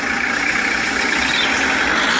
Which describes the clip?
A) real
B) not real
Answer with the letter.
A